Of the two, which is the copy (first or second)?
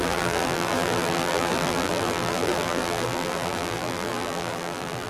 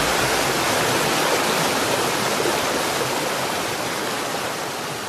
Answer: first